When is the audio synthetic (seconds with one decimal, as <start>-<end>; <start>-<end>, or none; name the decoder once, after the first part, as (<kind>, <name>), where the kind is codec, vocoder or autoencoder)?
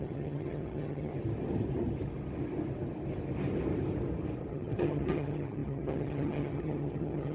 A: 0.0-1.1 (vocoder, HiFi-GAN); 4.5-7.3